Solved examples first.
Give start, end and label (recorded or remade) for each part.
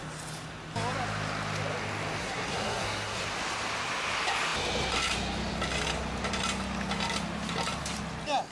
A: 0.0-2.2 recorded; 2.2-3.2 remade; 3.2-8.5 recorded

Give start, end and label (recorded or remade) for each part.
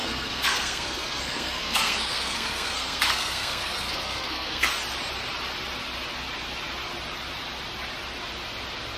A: 0.0-4.7 remade; 4.7-9.0 recorded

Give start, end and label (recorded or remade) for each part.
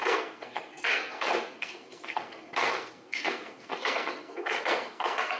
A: 0.0-5.4 remade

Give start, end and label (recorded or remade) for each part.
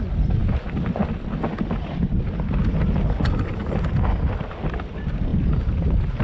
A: 0.0-6.2 recorded